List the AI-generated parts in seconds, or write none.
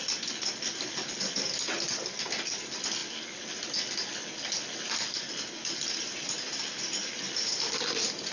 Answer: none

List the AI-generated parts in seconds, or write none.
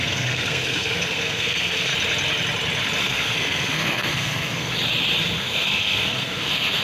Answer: 0.0-1.9 (codec, SNAC); 3.0-4.7; 5.4-6.8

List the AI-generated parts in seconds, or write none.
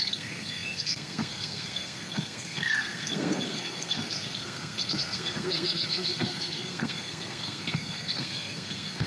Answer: 0.0-9.1 (codec, SNAC)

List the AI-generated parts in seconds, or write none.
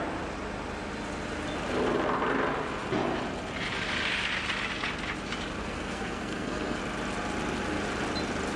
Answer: 5.6-6.8 (codec, SNAC)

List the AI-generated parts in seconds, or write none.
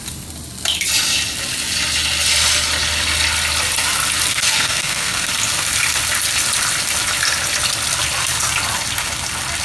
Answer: 4.3-5.3 (codec, SNAC)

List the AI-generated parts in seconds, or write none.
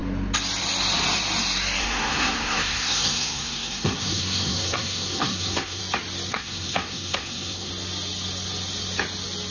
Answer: 1.8-5.8 (codec, SNAC); 6.3-7.7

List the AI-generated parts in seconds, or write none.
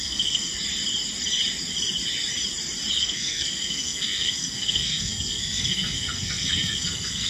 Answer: 0.0-0.5 (codec, SNAC); 3.0-7.3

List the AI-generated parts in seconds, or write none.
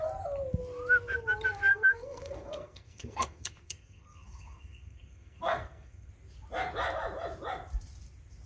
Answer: 1.7-6.1 (codec, SNAC)